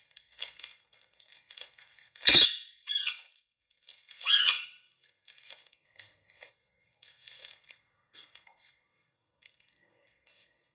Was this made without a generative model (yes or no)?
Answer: no